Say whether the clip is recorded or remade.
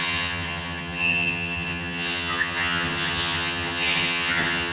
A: remade